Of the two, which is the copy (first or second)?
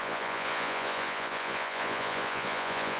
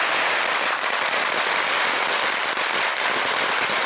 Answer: first